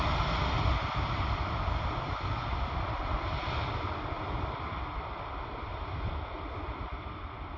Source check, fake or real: real